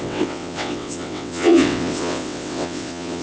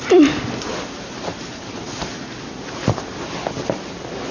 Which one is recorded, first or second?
second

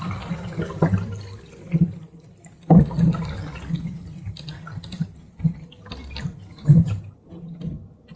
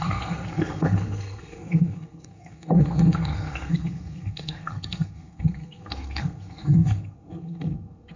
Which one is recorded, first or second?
first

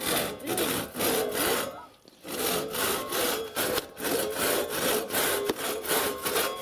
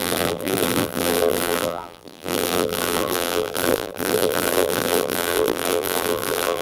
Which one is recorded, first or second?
first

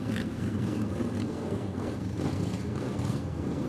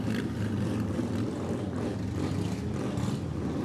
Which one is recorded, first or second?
second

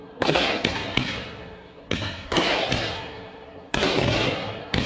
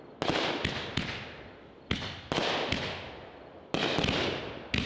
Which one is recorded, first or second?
second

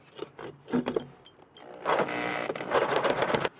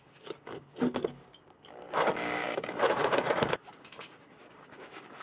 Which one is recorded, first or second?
first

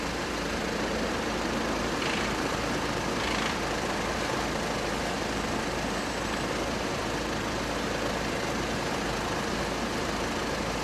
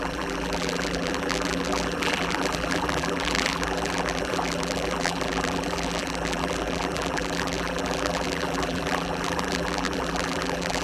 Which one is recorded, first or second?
first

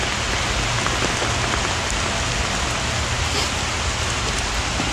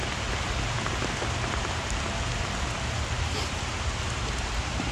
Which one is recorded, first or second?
first